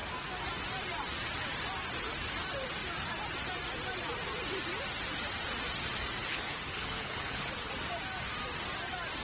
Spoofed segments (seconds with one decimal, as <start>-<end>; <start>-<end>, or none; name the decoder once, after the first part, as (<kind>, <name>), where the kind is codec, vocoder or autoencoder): 6.2-7.7 (codec, HILCodec)